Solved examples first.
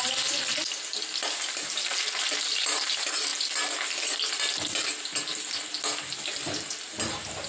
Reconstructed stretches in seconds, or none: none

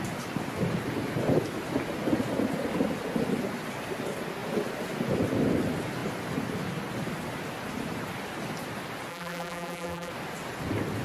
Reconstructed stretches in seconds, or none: 9.1-10.1

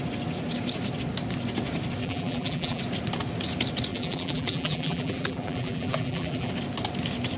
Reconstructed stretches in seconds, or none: 2.0-2.8; 3.9-6.5

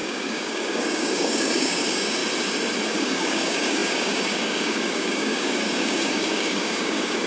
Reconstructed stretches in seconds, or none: 0.0-2.2; 2.9-7.3

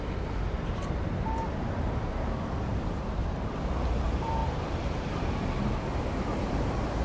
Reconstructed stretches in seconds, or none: 0.0-3.2; 3.9-7.0

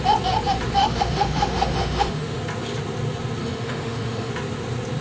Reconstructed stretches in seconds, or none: 0.8-2.4; 3.4-4.3